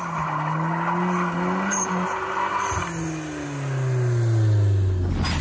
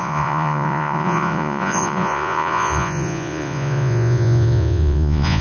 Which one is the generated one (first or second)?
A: second